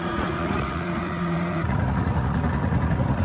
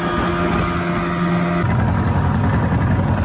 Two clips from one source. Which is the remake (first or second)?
first